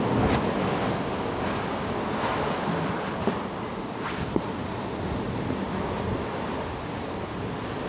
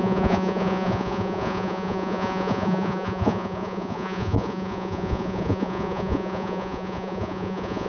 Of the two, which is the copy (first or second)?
second